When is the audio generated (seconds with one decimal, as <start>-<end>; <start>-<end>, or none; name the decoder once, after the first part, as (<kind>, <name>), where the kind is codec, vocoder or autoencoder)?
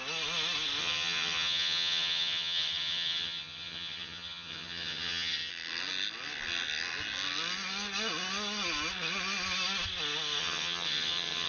0.8-5.5 (vocoder, HiFi-GAN); 10.4-11.5